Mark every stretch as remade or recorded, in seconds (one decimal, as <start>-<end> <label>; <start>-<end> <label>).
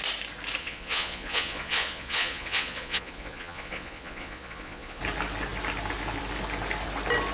0.0-0.6 recorded; 0.6-5.0 remade; 5.0-7.3 recorded